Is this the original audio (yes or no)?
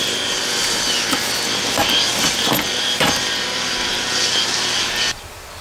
yes